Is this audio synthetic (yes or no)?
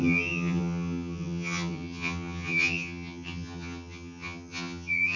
yes